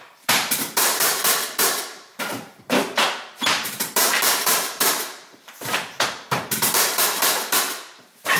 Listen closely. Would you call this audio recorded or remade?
remade